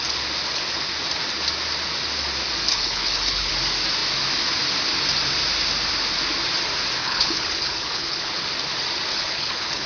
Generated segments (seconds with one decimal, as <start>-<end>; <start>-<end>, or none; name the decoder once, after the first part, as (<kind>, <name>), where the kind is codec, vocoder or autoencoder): 2.7-3.5 (codec, HILCodec); 7.0-8.3; 9.1-9.9